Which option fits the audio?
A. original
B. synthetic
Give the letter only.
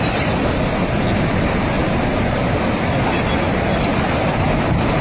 A